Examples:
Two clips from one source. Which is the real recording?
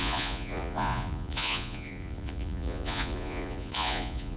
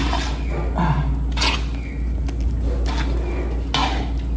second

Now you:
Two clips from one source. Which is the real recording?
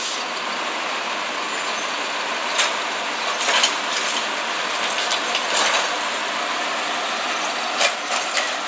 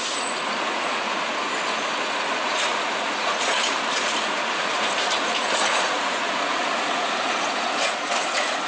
first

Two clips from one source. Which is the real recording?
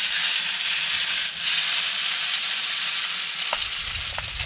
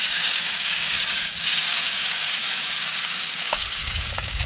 first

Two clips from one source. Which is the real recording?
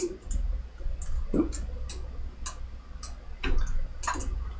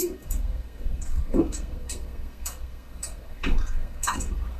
first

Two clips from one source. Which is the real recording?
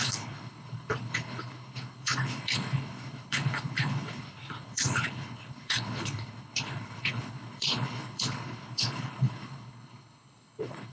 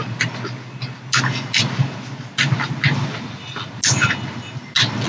second